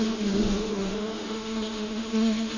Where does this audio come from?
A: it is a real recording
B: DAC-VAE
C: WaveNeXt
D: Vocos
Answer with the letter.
B